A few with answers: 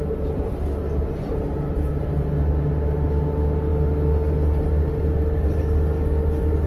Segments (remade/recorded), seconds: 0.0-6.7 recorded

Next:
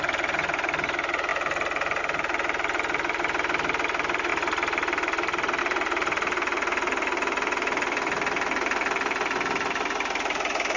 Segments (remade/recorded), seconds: 0.0-10.8 recorded

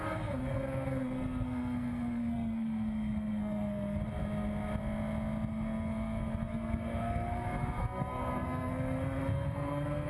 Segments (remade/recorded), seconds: 0.0-4.0 remade; 4.0-5.5 recorded; 5.5-10.1 remade

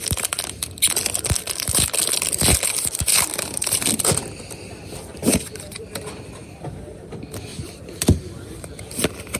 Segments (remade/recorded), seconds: 0.0-3.1 recorded; 3.1-7.1 remade; 7.1-7.5 recorded; 7.5-9.0 remade; 9.0-9.4 recorded

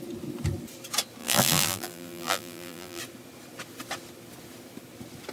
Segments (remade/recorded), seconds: 0.0-1.2 recorded; 1.2-3.0 remade; 3.0-5.3 recorded

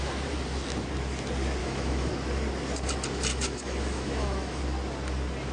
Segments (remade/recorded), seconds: 0.0-1.6 recorded; 1.6-2.1 remade; 2.1-3.3 recorded; 3.3-4.6 remade; 4.6-5.5 recorded